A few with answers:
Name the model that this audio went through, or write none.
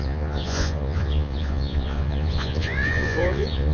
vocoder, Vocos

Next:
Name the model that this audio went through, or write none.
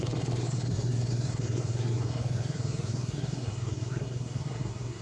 codec, SNAC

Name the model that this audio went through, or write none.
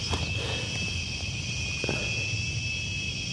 none